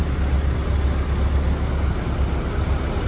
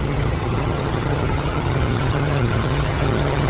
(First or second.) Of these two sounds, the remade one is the second